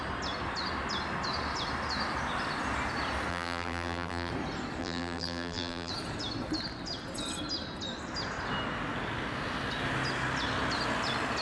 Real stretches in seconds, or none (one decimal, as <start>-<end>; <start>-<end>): 0.0-3.3; 4.3-4.8; 5.9-11.4